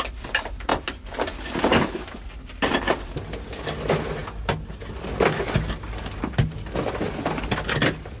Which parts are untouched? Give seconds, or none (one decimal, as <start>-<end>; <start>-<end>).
0.0-8.2